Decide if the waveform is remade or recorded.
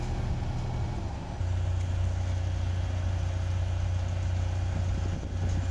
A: recorded